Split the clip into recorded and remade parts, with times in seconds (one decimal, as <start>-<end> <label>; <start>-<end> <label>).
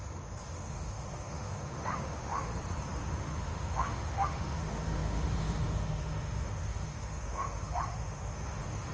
0.0-2.5 remade; 2.5-3.0 recorded; 3.0-8.9 remade